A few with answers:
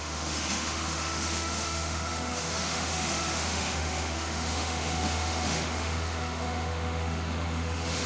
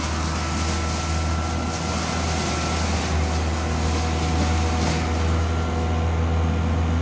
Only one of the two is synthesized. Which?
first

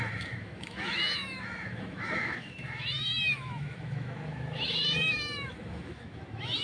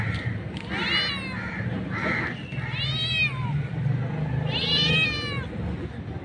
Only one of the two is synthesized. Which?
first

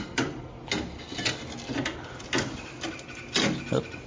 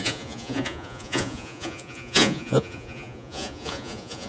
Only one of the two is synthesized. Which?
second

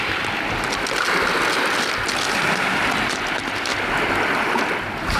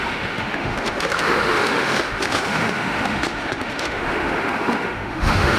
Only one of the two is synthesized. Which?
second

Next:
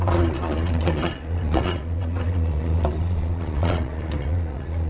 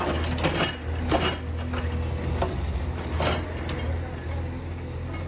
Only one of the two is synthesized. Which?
first